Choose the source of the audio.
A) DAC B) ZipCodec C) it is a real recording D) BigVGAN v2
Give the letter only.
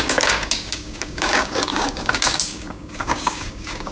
A